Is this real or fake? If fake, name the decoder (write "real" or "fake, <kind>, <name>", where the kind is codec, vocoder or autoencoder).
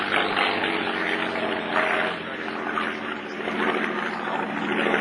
real